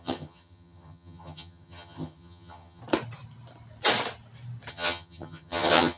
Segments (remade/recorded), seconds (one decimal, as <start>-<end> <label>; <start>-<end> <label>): 0.0-2.8 remade; 2.8-4.7 recorded; 4.7-6.0 remade